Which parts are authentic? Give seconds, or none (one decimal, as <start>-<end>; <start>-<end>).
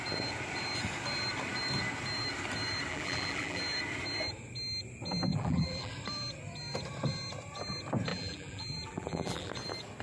0.0-2.9; 3.6-5.3; 5.9-8.1; 9.5-10.0